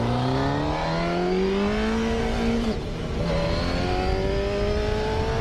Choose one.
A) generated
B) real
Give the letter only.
B